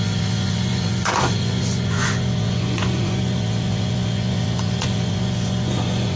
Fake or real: fake